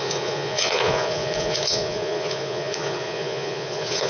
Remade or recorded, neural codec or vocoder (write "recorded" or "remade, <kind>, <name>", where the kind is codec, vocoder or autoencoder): remade, vocoder, Vocos